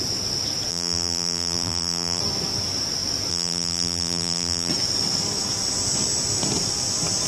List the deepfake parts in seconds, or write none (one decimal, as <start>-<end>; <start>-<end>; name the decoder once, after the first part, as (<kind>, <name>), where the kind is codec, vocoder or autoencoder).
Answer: 0.7-2.2 (vocoder, BigVGAN v2); 3.3-4.7